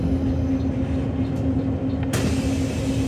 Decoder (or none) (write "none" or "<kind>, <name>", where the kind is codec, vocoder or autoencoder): none